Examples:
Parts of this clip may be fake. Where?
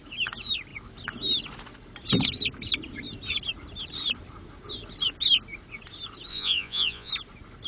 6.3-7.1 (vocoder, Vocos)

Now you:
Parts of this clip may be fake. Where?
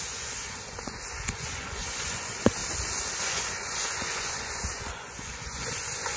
0.0-2.6 (vocoder, Vocos); 3.2-6.2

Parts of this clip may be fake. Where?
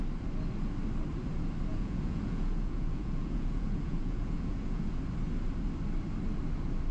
1.7-5.0 (vocoder, Vocos)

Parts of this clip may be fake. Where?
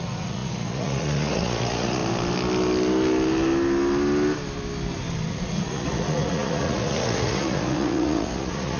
0.0-2.0 (vocoder, Vocos); 5.3-8.8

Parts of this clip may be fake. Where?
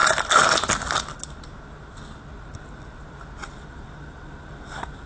none